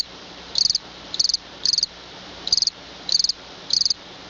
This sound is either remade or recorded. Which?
remade